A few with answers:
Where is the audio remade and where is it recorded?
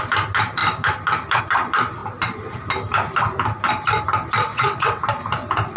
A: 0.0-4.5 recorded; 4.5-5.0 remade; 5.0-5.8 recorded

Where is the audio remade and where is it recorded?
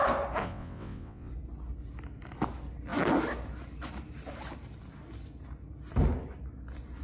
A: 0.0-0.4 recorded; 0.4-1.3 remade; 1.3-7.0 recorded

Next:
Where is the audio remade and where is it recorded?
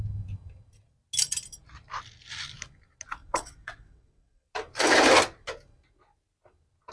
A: 0.0-3.2 recorded; 3.2-4.5 remade; 4.5-6.9 recorded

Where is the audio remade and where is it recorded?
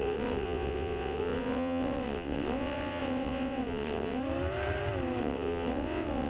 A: 0.0-4.2 remade; 4.2-5.2 recorded; 5.2-6.3 remade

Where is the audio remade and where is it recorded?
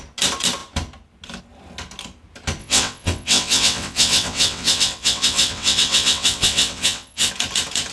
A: 0.0-2.6 recorded; 2.6-7.3 remade; 7.3-7.9 recorded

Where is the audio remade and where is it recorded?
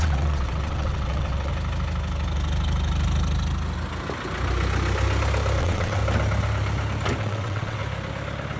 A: 0.0-1.5 remade; 1.5-5.6 recorded; 5.6-6.0 remade; 6.0-7.2 recorded; 7.2-7.8 remade; 7.8-8.6 recorded